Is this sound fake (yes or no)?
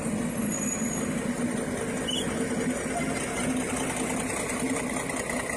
no